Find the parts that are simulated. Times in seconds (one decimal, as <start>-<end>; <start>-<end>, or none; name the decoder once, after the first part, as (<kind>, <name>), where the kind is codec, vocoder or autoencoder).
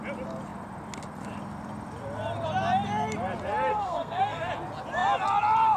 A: 3.7-4.5 (codec, SNAC)